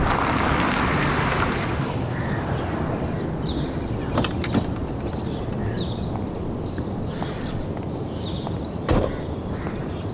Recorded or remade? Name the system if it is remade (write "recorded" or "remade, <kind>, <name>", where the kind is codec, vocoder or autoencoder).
recorded